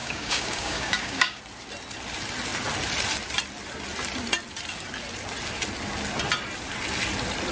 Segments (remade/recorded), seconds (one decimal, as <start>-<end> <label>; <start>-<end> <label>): 0.0-1.4 remade; 1.4-7.5 recorded